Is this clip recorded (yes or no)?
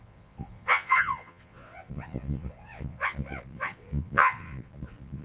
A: no